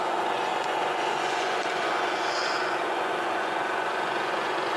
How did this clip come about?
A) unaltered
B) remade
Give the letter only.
B